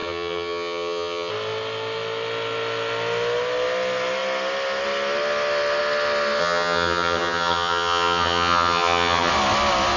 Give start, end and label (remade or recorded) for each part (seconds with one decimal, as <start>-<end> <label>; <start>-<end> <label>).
0.0-1.3 remade; 1.3-6.4 recorded; 6.4-9.3 remade; 9.3-10.0 recorded